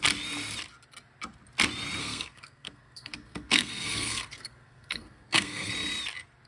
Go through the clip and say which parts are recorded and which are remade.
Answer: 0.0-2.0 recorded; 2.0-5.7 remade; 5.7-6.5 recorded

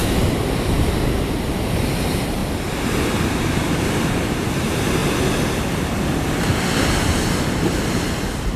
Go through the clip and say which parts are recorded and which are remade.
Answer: 0.0-0.8 recorded; 0.8-2.4 remade; 2.4-3.0 recorded; 3.0-5.0 remade; 5.0-8.1 recorded; 8.1-8.6 remade